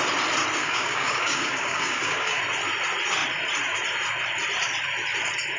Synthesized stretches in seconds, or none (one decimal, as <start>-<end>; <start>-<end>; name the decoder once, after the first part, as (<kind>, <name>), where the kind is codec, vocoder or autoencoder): 0.6-2.4 (codec, DAC)